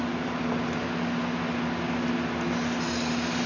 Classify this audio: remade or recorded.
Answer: recorded